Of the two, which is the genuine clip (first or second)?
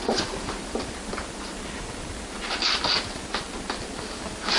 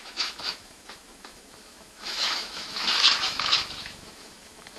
first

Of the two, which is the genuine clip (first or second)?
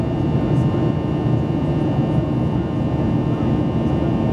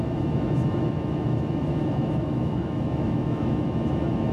first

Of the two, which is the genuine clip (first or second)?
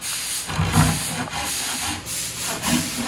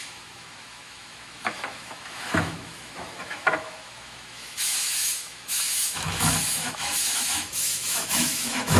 first